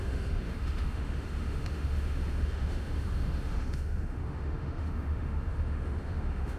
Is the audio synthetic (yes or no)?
yes